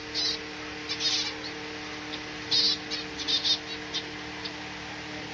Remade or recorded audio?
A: recorded